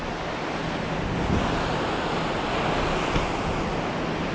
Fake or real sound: real